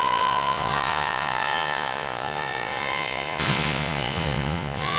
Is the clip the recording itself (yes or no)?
no